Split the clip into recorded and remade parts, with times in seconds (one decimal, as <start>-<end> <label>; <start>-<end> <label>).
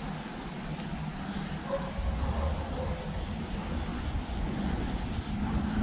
0.0-3.9 recorded; 3.9-5.1 remade; 5.1-5.8 recorded